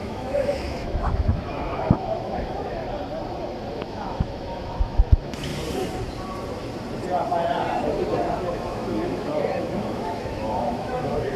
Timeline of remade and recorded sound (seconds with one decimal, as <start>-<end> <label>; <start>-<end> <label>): 0.0-2.8 remade; 2.8-3.7 recorded; 3.7-5.5 remade; 5.5-8.5 recorded; 8.5-11.4 remade